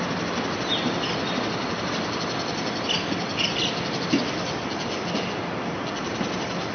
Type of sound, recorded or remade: recorded